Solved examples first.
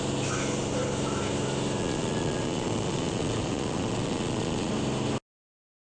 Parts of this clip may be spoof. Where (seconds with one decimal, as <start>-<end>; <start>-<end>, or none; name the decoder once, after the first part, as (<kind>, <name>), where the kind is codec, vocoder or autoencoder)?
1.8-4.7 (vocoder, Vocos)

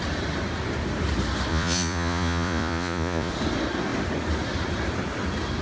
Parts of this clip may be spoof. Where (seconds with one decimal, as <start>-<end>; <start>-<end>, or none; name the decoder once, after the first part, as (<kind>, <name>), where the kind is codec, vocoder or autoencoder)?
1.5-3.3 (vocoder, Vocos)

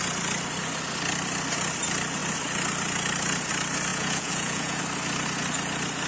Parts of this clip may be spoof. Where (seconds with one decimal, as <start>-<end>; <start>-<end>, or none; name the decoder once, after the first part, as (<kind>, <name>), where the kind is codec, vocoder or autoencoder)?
3.9-4.8 (vocoder, Vocos)